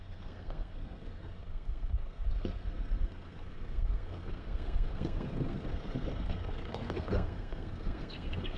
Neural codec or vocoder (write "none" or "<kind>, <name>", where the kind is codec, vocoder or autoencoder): codec, SNAC